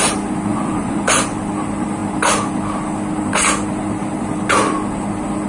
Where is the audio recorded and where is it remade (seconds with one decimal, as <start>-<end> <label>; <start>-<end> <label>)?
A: 0.0-0.5 recorded; 0.5-1.1 remade; 1.1-5.5 recorded